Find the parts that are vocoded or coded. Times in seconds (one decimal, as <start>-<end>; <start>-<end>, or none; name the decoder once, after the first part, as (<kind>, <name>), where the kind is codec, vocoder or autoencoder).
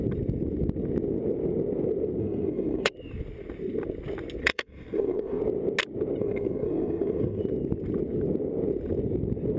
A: 2.2-2.9 (codec, SNAC); 4.4-5.4; 6.2-7.4